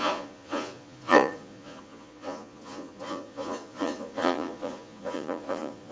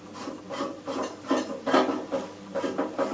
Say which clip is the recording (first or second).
second